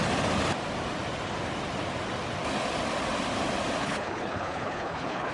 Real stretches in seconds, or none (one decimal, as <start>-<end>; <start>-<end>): 0.0-3.8